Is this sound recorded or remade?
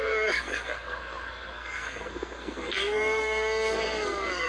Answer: remade